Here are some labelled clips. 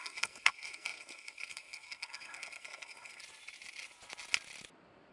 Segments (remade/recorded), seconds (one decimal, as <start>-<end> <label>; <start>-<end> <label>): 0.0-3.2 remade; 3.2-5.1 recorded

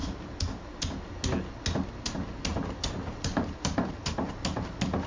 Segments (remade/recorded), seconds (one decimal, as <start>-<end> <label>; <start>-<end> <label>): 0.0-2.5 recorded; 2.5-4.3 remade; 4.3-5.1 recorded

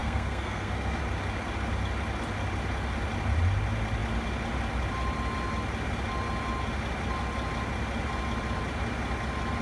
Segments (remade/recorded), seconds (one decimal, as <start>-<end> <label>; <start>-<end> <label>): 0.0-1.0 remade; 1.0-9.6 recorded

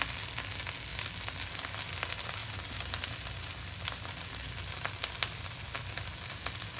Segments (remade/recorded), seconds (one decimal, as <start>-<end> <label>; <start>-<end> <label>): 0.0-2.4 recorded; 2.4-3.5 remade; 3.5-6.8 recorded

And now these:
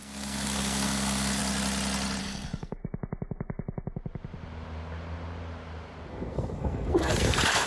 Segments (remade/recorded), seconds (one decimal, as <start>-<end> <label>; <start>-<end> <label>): 0.0-1.4 remade; 1.4-2.2 recorded; 2.2-2.8 remade; 2.8-6.1 recorded; 6.1-7.7 remade